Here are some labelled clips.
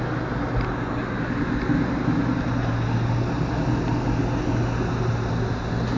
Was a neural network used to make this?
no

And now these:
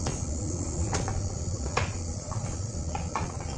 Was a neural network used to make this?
yes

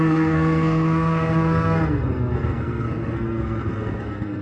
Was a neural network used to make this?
yes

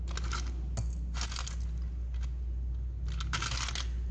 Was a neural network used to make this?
no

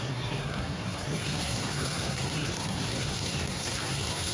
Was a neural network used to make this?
yes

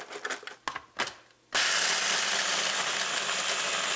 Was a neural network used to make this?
no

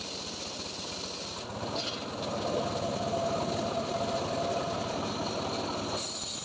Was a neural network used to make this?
no